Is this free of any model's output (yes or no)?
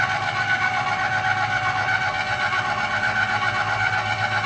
yes